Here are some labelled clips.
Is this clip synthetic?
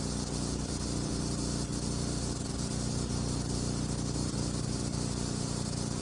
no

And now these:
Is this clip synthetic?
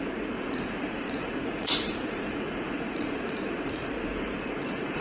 yes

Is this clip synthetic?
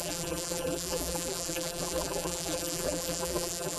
yes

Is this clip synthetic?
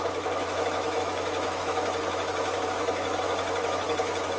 yes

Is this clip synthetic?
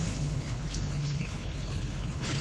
yes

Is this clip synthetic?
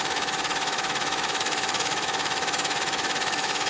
yes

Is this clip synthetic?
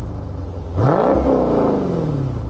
no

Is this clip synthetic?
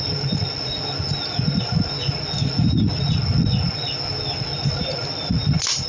no